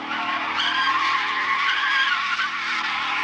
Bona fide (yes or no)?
yes